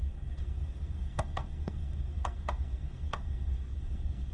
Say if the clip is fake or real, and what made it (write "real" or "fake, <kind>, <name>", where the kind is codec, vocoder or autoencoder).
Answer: fake, codec, SNAC